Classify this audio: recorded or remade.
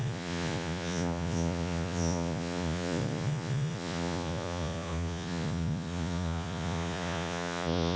remade